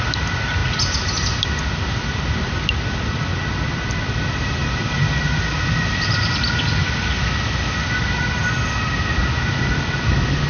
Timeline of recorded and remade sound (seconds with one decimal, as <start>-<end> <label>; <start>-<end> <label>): 0.0-10.5 recorded